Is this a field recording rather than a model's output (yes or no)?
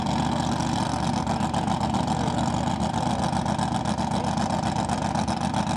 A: yes